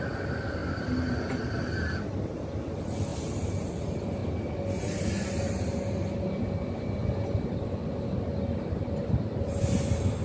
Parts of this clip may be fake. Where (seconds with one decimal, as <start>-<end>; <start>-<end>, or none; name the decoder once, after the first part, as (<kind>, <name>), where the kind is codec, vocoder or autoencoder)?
none